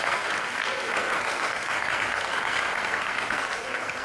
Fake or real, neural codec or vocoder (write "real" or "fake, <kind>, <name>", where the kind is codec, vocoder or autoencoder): fake, codec, SNAC